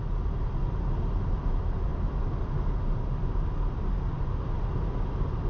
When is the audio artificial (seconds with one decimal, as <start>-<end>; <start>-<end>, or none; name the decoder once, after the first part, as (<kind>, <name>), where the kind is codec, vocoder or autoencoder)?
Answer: none